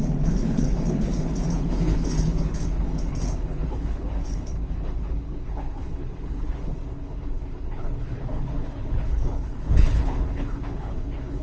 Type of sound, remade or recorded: remade